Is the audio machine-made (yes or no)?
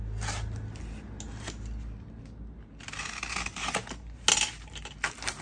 no